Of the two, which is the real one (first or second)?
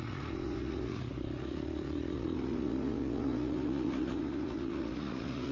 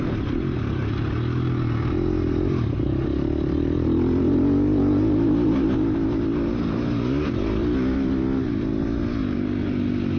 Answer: second